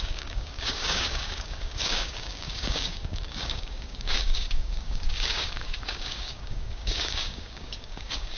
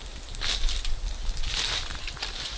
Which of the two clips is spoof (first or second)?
first